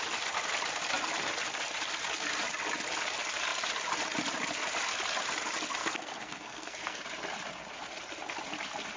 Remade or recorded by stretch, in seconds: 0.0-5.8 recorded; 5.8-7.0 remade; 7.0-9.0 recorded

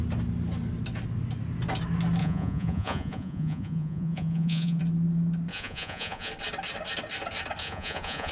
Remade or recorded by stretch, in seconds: 0.0-2.2 recorded; 2.2-4.8 remade; 4.8-5.5 recorded; 5.5-6.3 remade; 6.3-7.6 recorded; 7.6-8.3 remade

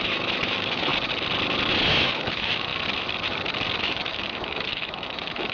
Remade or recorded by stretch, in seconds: 0.0-0.9 remade; 0.9-1.9 recorded; 1.9-2.7 remade; 2.7-3.8 recorded; 3.8-5.5 remade

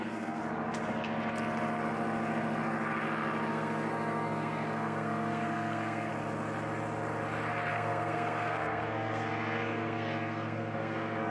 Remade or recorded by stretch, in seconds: 0.0-0.4 remade; 0.4-3.5 recorded; 3.5-6.1 remade; 6.1-7.7 recorded; 7.7-11.3 remade

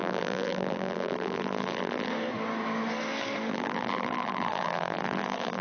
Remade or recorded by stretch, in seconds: 0.0-2.1 remade; 2.1-3.5 recorded; 3.5-5.6 remade

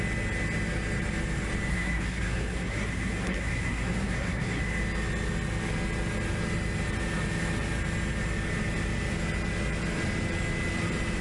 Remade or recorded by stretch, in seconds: 0.0-1.7 recorded; 1.7-4.6 remade; 4.6-11.2 recorded

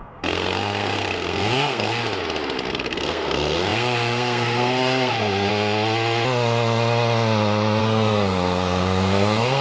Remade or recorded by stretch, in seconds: 0.0-2.0 remade; 2.0-2.7 recorded; 2.7-5.5 remade; 5.5-7.8 recorded; 7.8-9.6 remade